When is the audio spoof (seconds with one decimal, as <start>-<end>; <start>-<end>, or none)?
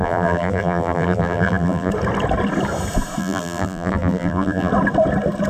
0.0-1.9; 3.2-4.7